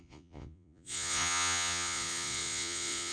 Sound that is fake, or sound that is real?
fake